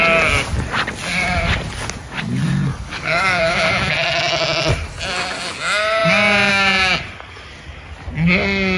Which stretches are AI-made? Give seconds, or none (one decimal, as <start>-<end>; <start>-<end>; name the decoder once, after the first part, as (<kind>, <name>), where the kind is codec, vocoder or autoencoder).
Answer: 2.7-3.4 (codec, DAC)